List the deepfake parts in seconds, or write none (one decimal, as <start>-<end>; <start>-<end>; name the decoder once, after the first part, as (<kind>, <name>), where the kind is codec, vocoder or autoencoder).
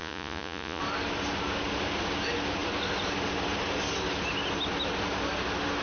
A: 0.0-0.8 (vocoder, Vocos)